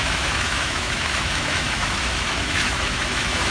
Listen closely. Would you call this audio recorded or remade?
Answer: remade